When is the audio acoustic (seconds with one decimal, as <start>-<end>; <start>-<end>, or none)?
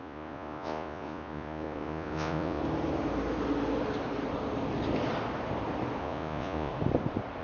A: 2.6-6.0; 6.7-7.4